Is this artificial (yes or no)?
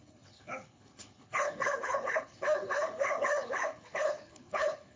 yes